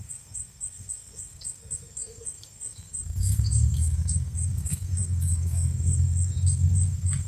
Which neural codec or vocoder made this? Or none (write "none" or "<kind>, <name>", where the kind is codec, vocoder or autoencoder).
codec, SNAC